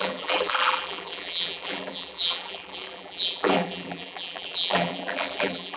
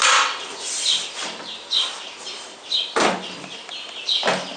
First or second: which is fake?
first